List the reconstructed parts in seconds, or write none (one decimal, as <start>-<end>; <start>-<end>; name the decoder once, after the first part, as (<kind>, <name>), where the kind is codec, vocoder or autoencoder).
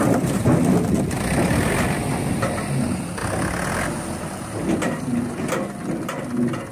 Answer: none